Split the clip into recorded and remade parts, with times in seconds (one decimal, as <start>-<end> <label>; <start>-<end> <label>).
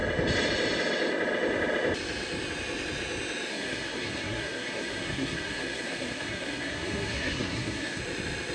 0.0-3.5 recorded; 3.5-8.0 remade; 8.0-8.5 recorded